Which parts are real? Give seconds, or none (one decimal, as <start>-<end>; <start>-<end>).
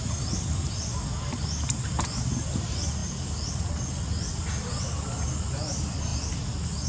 0.0-6.9